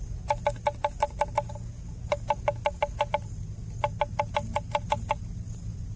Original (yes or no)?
yes